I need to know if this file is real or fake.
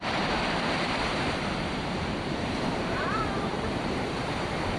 fake